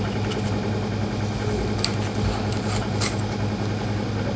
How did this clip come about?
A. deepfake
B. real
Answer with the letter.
B